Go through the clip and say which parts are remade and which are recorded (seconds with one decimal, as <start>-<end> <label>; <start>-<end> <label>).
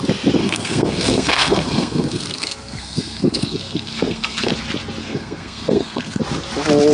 0.0-0.4 recorded; 0.4-4.5 remade; 4.5-5.0 recorded; 5.0-6.2 remade; 6.2-6.9 recorded